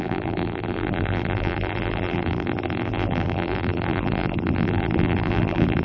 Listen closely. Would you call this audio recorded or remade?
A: remade